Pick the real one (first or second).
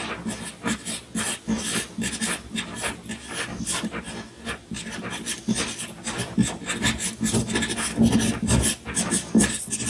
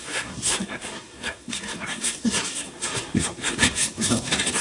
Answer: first